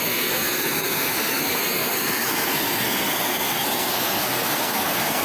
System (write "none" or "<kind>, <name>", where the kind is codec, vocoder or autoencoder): codec, SNAC